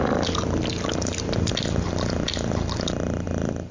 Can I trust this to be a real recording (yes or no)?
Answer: yes